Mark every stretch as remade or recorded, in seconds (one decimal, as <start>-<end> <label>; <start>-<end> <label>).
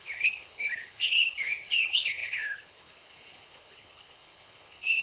0.0-5.0 remade